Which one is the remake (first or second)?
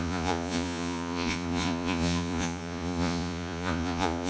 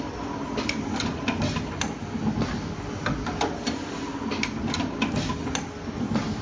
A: first